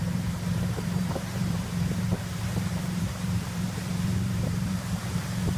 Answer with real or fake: fake